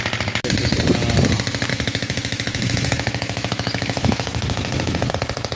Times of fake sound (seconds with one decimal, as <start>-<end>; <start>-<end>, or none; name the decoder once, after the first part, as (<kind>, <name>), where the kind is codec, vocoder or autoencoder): 1.7-5.1 (autoencoder, DAC-VAE)